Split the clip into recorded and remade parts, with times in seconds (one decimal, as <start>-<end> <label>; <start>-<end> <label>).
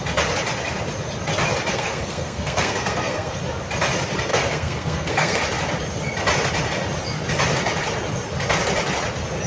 0.0-1.7 recorded; 1.7-3.4 remade; 3.4-4.3 recorded; 4.3-5.4 remade; 5.4-9.5 recorded